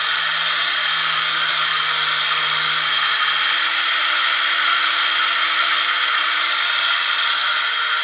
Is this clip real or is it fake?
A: real